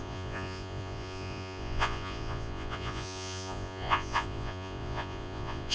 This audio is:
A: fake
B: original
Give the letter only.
A